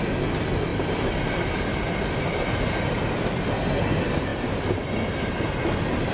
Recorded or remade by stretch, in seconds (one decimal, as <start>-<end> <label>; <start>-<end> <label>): 0.0-0.7 recorded; 0.7-3.2 remade; 3.2-6.1 recorded